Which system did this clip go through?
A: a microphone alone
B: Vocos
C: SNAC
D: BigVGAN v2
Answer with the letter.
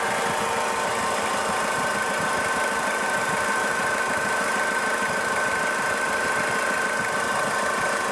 A